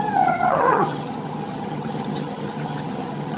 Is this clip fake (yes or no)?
yes